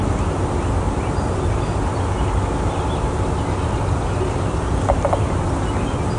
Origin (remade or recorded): recorded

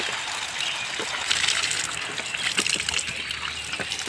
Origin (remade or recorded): recorded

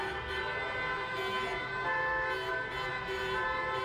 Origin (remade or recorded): recorded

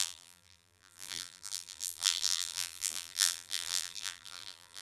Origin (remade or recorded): remade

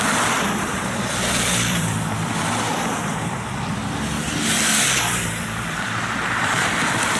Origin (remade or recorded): remade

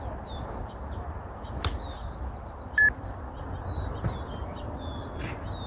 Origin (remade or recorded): recorded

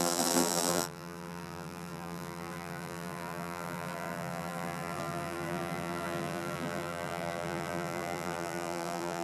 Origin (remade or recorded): remade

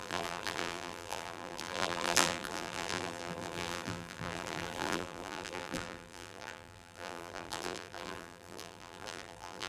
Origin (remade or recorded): remade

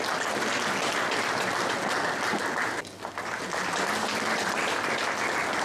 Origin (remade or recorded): recorded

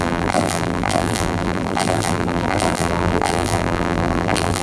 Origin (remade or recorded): remade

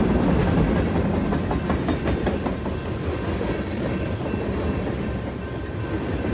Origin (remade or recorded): recorded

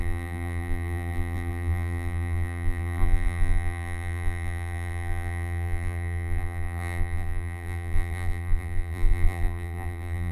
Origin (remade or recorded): remade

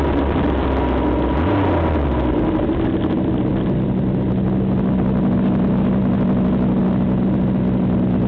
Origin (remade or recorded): recorded